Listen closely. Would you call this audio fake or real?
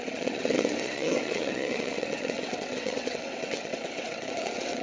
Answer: fake